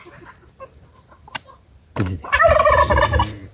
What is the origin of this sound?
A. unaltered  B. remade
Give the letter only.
B